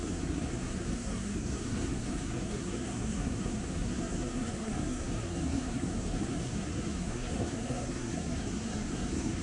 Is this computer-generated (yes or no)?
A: yes